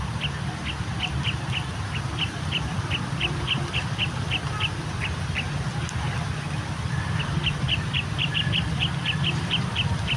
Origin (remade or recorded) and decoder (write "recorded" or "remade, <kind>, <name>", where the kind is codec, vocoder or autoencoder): remade, vocoder, BigVGAN v2